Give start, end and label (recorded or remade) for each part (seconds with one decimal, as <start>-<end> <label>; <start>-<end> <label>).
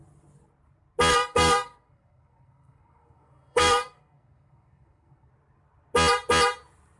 0.0-1.1 recorded; 1.1-5.3 remade; 5.3-7.0 recorded